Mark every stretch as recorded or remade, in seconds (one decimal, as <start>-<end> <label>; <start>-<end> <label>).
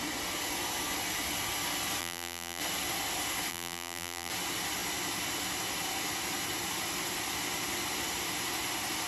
0.0-2.0 recorded; 2.0-2.6 remade; 2.6-3.5 recorded; 3.5-4.3 remade; 4.3-9.1 recorded